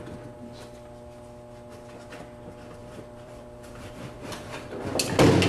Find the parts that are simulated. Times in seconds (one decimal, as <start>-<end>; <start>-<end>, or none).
2.8-4.8